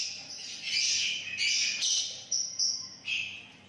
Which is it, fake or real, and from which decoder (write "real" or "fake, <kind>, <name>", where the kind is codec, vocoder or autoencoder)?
real